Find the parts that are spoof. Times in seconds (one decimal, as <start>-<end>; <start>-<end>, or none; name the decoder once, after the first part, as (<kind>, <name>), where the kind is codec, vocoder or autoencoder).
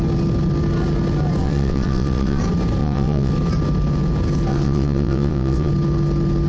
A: 1.4-2.4 (vocoder, WaveNeXt); 2.8-3.3; 4.5-5.7